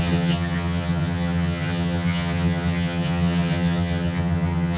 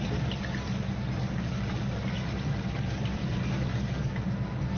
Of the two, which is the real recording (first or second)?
second